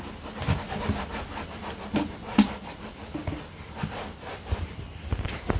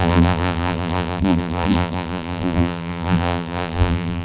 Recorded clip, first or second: first